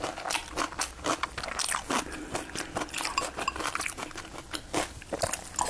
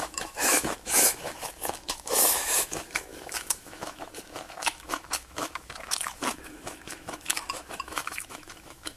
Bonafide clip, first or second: first